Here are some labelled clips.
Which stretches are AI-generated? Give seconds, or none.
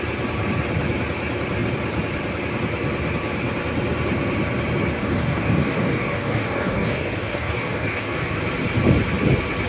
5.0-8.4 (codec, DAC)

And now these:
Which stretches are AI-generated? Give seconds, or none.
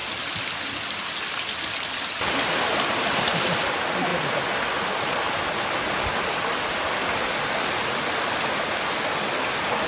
none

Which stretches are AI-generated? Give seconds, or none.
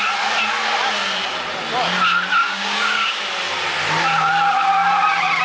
2.4-3.2 (codec, DAC)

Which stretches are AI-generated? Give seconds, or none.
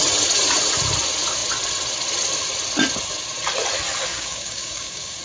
4.1-5.2 (codec, DAC)